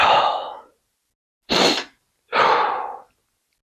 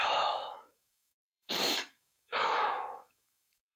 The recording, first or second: first